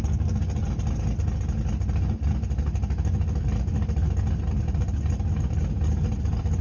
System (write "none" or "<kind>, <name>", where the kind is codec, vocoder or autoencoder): none